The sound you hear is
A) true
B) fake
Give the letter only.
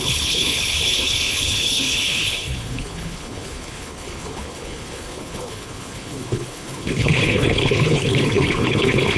B